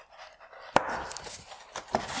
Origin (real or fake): real